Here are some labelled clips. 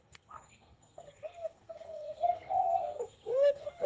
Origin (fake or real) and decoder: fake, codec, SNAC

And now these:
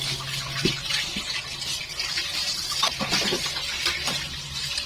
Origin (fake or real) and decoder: real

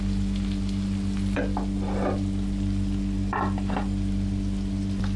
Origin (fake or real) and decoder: real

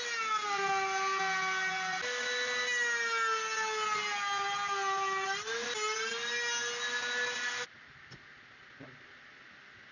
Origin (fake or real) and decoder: real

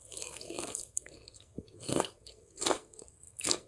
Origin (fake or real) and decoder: fake, codec, SNAC